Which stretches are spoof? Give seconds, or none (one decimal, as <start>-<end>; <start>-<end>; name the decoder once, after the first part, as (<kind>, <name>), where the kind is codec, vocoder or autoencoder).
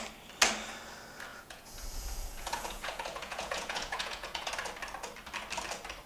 1.3-4.5 (vocoder, Vocos)